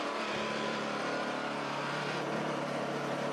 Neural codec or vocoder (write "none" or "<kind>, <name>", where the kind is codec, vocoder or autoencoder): vocoder, BigVGAN v2